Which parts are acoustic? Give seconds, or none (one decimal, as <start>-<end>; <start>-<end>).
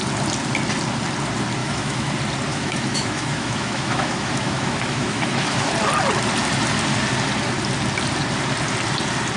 0.0-1.6; 2.1-2.5; 5.7-9.4